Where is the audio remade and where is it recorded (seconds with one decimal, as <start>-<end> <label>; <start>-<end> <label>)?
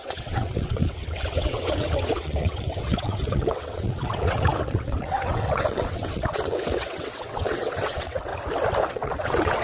0.0-8.3 remade; 8.3-8.9 recorded; 8.9-9.6 remade